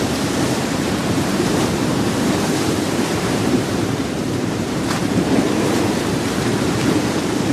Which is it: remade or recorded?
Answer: remade